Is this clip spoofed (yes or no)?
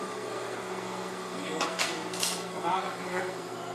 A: yes